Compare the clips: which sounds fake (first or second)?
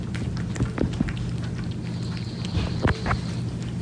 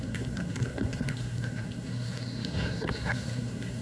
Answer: second